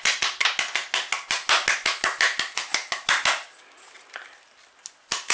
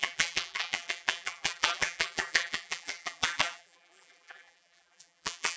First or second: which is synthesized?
second